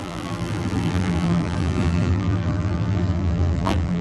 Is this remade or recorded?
remade